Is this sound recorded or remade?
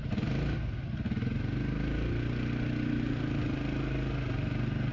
recorded